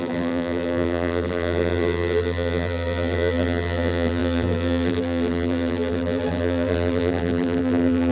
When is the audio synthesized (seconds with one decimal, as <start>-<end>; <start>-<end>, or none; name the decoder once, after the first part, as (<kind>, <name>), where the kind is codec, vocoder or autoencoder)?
0.0-8.1 (vocoder, BigVGAN v2)

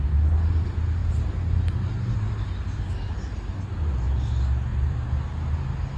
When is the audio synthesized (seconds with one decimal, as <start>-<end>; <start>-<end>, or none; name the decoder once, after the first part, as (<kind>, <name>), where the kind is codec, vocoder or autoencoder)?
1.0-2.1 (vocoder, BigVGAN v2); 4.7-6.0

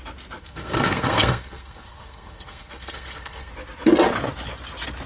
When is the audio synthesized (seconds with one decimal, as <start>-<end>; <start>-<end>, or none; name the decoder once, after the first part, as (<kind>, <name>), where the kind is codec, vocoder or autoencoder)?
0.4-3.5 (codec, SNAC)

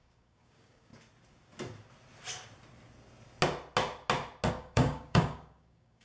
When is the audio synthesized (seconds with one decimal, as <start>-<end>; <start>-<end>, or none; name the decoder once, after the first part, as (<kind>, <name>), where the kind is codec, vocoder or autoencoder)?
0.0-0.9 (codec, DAC); 4.5-6.0

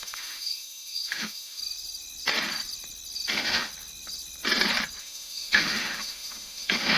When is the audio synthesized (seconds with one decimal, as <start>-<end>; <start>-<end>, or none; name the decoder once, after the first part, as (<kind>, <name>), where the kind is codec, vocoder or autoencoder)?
0.0-1.6 (autoencoder, DAC-VAE); 3.3-3.7; 5.0-7.0

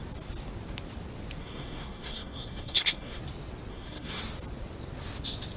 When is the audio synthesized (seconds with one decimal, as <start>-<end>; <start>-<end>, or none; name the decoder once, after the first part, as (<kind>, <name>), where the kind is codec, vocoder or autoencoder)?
1.4-3.2 (codec, SNAC); 3.7-4.2